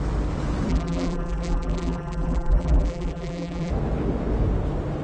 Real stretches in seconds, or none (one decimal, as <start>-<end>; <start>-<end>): 0.0-0.7; 3.7-5.0